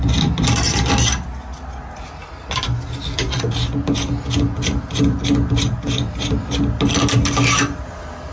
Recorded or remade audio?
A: recorded